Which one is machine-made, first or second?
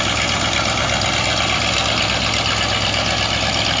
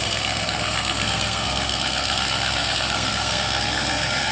second